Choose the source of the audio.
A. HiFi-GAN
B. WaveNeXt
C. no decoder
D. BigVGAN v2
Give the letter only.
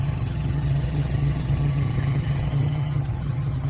A